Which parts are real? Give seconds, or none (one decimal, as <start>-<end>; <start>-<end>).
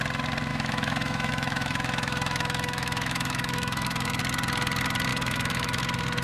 0.0-0.5; 4.2-5.1; 5.8-6.2